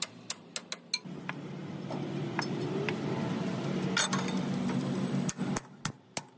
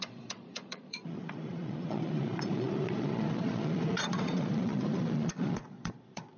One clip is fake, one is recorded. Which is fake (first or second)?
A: second